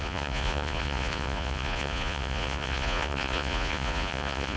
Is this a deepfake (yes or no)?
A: yes